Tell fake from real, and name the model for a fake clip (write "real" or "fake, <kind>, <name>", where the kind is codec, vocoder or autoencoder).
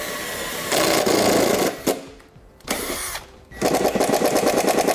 real